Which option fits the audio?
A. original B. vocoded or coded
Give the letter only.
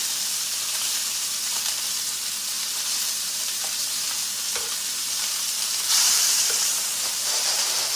B